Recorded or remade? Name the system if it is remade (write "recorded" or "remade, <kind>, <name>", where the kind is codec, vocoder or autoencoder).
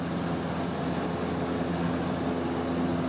recorded